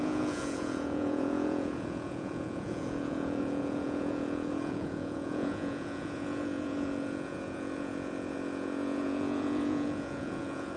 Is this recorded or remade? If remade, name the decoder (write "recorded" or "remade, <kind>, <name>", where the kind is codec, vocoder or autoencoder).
remade, vocoder, Vocos